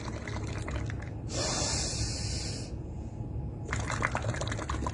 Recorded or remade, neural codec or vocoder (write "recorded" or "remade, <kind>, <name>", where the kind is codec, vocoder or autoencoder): recorded